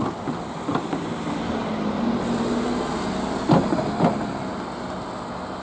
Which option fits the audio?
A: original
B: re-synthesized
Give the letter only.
A